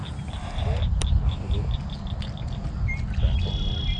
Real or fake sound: real